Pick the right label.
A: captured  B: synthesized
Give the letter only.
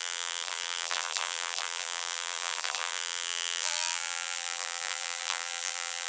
B